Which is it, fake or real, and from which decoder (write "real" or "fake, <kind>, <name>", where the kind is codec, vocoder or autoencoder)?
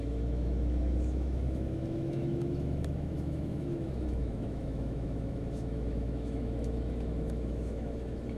fake, autoencoder, DAC-VAE